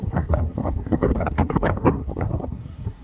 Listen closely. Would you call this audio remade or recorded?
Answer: remade